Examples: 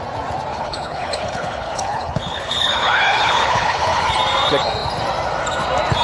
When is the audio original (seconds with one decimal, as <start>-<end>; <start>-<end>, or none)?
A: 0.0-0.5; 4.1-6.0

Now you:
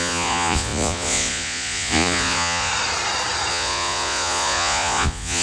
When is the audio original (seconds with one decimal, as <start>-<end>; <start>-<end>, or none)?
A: 2.7-3.5

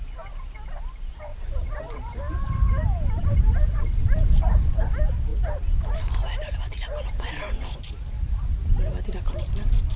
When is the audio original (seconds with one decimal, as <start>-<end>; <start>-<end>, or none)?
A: 0.0-1.3; 4.7-5.3

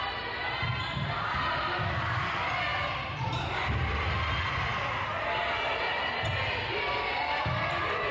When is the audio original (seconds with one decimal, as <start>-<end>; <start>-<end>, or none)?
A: 0.0-8.1